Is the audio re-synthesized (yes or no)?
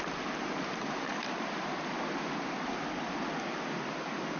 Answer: no